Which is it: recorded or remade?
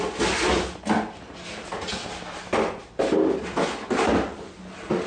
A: recorded